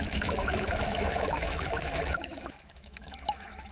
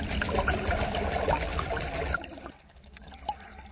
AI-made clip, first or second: first